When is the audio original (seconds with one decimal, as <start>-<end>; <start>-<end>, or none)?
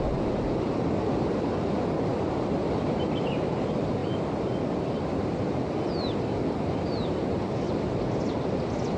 4.0-4.7